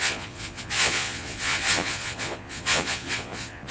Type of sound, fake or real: fake